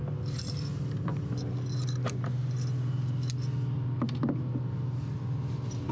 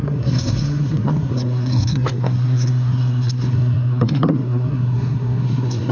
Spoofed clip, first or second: second